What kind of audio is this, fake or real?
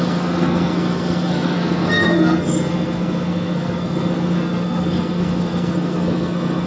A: fake